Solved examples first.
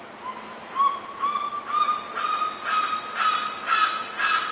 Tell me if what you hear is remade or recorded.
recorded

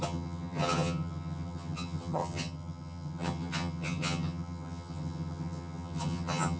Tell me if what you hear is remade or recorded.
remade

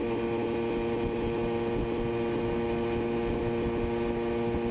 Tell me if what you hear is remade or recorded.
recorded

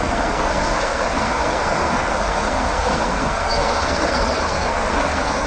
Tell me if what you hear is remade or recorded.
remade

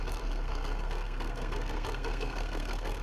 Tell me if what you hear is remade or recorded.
remade